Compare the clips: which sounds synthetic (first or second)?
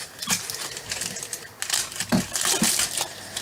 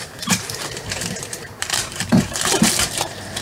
second